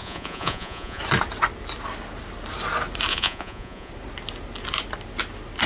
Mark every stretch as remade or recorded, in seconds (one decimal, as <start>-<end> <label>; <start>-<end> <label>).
0.0-1.0 remade; 1.0-3.1 recorded; 3.1-3.9 remade; 3.9-5.7 recorded